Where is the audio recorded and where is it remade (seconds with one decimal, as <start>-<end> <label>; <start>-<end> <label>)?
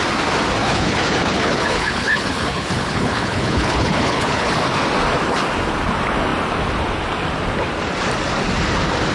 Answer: 0.0-0.6 recorded; 0.6-4.5 remade; 4.5-9.1 recorded